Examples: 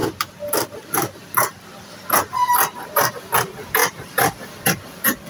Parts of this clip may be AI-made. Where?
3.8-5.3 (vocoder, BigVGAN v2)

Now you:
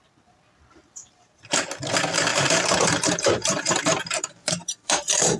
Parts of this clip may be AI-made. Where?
1.0-1.7 (vocoder, BigVGAN v2); 2.3-5.4

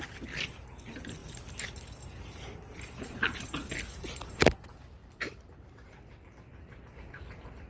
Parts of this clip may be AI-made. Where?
5.0-7.2 (vocoder, BigVGAN v2)